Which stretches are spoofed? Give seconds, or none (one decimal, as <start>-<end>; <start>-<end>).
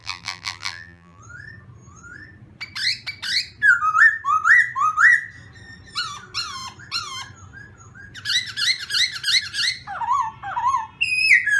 0.0-1.2